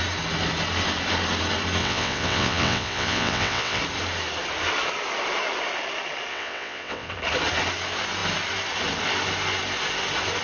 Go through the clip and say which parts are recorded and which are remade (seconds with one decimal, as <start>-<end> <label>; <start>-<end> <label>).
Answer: 0.0-1.8 recorded; 1.8-3.8 remade; 3.8-6.3 recorded; 6.3-7.1 remade; 7.1-10.4 recorded